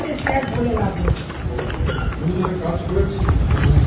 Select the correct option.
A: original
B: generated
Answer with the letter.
A